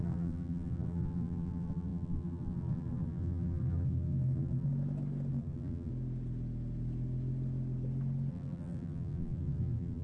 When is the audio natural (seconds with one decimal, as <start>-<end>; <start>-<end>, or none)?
4.7-5.3; 5.9-8.3